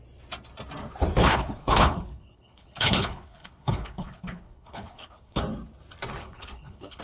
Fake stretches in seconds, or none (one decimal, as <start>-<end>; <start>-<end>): 1.2-5.4; 6.2-7.0